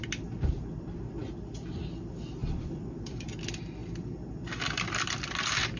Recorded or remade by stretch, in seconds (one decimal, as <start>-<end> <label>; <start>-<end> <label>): 0.0-1.2 recorded; 1.2-1.9 remade; 1.9-2.4 recorded; 2.4-3.4 remade; 3.4-3.8 recorded; 3.8-4.5 remade; 4.5-5.8 recorded